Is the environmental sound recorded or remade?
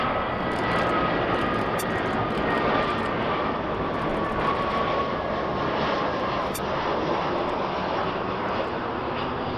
recorded